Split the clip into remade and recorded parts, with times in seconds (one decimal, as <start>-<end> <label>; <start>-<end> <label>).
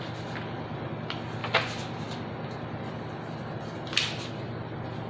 0.0-5.1 recorded